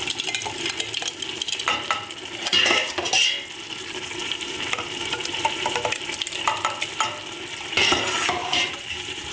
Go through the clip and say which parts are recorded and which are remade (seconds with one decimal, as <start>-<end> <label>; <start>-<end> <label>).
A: 0.0-4.2 recorded; 4.2-5.2 remade; 5.2-8.4 recorded; 8.4-9.3 remade